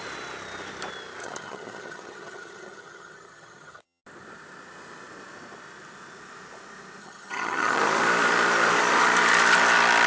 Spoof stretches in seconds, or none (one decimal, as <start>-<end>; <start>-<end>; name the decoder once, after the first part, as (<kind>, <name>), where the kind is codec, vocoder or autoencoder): 1.2-4.0 (vocoder, HiFi-GAN); 7.0-7.8